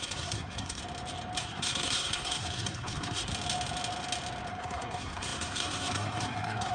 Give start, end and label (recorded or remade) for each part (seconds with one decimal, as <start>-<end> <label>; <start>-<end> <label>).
0.0-0.8 remade; 0.8-1.4 recorded; 1.4-3.3 remade; 3.3-4.5 recorded; 4.5-6.7 remade